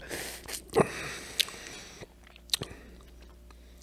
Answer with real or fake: real